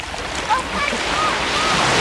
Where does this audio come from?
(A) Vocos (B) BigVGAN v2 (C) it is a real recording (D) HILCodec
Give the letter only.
C